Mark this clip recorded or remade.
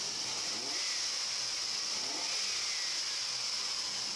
recorded